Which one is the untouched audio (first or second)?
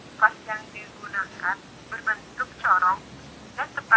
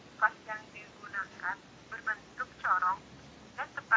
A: first